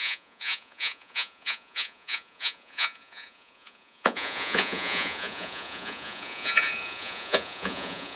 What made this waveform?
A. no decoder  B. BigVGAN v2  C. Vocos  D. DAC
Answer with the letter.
C